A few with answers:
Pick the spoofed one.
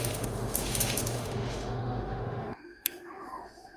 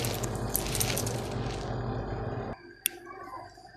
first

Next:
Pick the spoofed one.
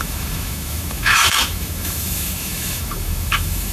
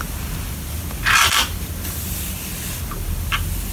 first